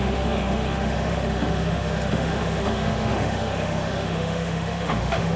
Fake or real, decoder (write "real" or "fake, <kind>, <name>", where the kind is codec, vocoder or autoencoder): fake, autoencoder, DAC-VAE